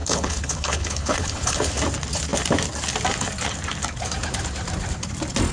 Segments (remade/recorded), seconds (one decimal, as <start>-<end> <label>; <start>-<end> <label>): 0.0-1.7 remade; 1.7-5.5 recorded